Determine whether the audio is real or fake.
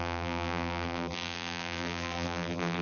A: fake